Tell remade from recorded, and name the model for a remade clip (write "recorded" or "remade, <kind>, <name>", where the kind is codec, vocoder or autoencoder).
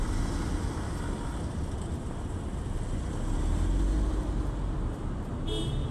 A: recorded